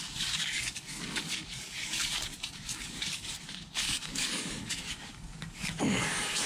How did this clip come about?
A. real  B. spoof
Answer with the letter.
B